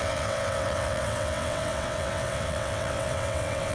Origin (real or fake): fake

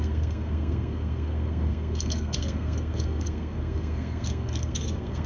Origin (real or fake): fake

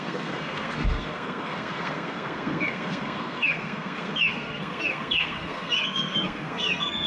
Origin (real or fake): fake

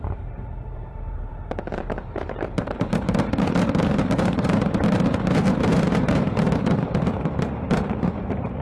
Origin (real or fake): fake